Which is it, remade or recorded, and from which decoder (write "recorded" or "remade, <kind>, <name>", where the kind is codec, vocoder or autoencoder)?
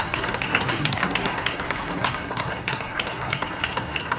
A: remade, codec, SNAC